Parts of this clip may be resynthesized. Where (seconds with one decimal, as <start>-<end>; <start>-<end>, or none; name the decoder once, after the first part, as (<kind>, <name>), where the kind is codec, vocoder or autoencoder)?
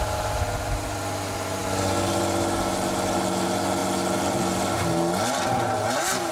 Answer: none